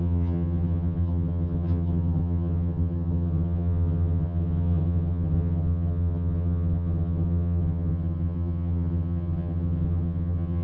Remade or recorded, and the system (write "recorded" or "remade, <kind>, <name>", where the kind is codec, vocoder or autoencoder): remade, vocoder, HiFi-GAN